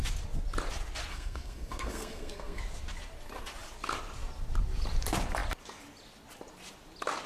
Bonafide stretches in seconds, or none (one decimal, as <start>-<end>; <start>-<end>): 0.0-1.1; 2.6-7.3